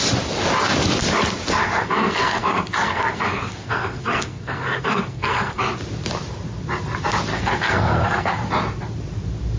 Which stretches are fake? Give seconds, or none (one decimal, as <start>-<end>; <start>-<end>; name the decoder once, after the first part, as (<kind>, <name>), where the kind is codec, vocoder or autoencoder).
1.6-5.6 (codec, SNAC); 7.3-8.5